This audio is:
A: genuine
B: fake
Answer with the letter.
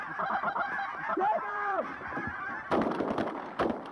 B